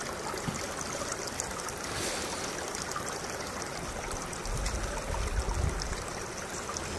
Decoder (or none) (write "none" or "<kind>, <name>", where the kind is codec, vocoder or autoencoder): none